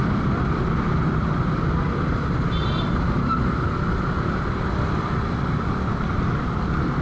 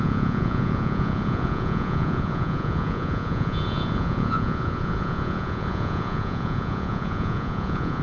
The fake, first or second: second